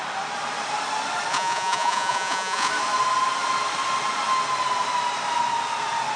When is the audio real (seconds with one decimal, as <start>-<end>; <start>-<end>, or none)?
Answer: 0.0-1.3; 2.7-6.2